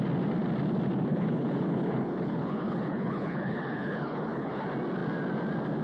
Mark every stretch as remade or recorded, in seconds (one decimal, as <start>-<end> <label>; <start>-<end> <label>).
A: 0.0-1.1 recorded; 1.1-4.6 remade; 4.6-5.8 recorded